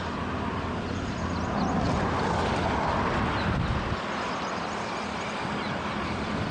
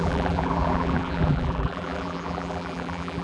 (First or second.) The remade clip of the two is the second